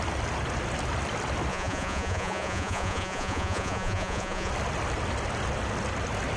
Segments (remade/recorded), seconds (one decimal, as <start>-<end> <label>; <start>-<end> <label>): 0.0-1.5 recorded; 1.5-4.5 remade; 4.5-6.4 recorded